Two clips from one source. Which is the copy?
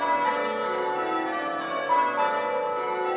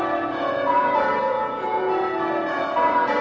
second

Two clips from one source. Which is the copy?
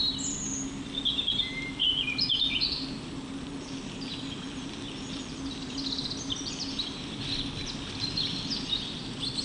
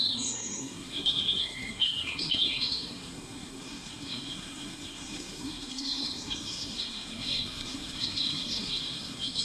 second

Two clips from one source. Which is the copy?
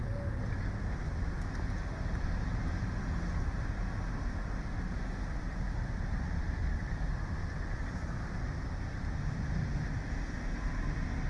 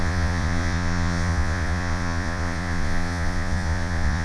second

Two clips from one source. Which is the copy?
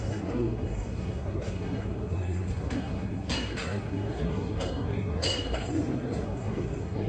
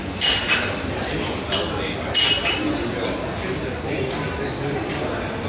first